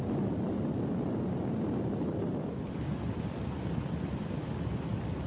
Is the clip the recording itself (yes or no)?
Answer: no